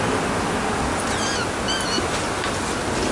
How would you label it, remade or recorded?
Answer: recorded